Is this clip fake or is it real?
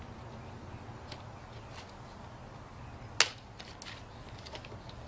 real